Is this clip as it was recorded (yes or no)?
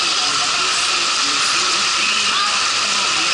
no